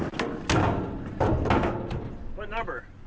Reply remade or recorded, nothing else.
recorded